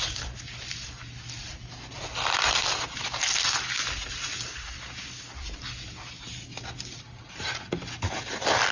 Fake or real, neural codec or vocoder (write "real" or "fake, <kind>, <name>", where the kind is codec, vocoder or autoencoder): real